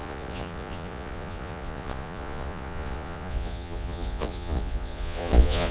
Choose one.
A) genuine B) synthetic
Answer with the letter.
B